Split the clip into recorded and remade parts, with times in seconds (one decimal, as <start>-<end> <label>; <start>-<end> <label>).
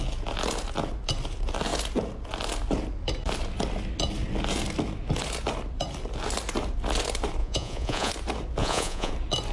0.0-7.4 recorded; 7.4-8.1 remade; 8.1-8.6 recorded; 8.6-9.1 remade; 9.1-9.5 recorded